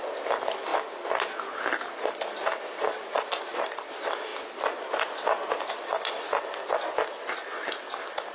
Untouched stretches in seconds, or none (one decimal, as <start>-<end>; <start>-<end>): 0.0-8.3